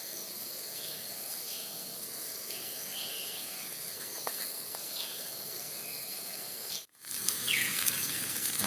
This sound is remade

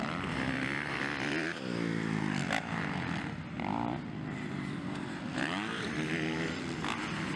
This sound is recorded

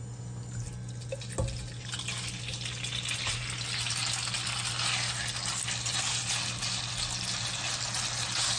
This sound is recorded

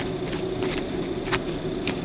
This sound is recorded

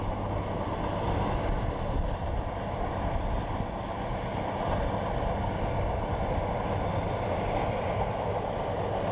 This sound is recorded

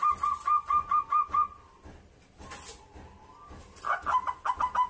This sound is recorded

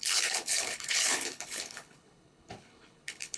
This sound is remade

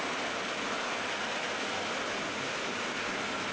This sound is recorded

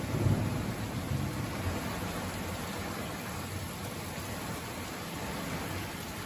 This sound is recorded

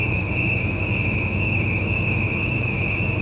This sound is remade